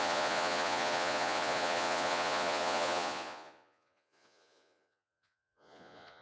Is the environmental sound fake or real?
fake